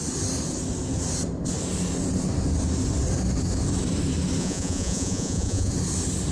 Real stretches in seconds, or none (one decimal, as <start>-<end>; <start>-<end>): 0.0-4.4; 5.7-6.3